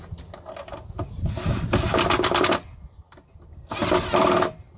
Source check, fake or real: real